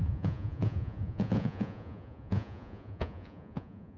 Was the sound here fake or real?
fake